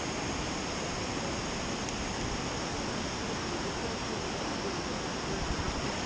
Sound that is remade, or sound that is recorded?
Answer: recorded